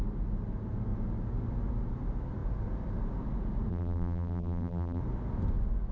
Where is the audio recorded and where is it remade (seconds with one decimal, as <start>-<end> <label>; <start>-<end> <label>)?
0.0-3.7 recorded; 3.7-5.0 remade; 5.0-5.9 recorded